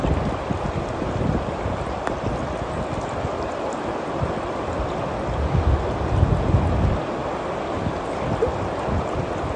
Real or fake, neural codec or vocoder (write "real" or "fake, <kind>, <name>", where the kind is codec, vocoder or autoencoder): real